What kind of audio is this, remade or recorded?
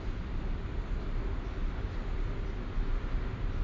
recorded